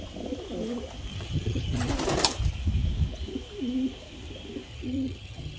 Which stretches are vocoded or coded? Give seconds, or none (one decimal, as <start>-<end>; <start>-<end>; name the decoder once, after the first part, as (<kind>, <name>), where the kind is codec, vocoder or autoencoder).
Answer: 1.1-1.9 (vocoder, HiFi-GAN); 4.7-5.6